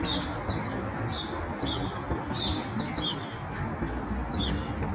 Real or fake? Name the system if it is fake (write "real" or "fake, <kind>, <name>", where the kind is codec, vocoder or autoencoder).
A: real